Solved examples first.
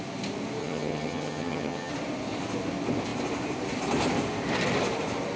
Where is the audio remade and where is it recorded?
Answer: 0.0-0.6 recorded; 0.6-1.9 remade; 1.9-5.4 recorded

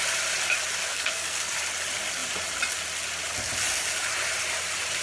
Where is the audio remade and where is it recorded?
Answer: 0.0-0.8 recorded; 0.8-1.5 remade; 1.5-5.0 recorded

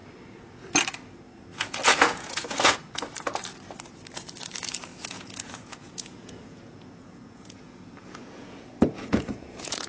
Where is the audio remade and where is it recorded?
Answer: 0.0-1.5 recorded; 1.5-2.8 remade; 2.8-4.9 recorded; 4.9-9.9 remade